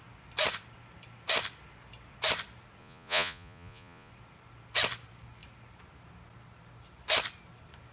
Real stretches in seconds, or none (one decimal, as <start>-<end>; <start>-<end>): 0.0-2.8; 4.1-7.9